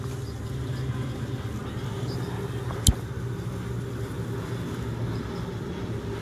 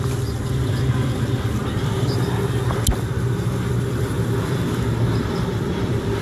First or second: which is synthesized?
second